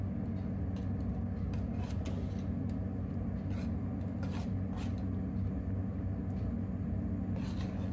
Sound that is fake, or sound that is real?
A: real